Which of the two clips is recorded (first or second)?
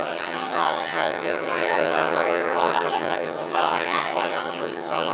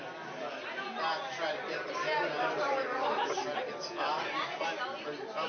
second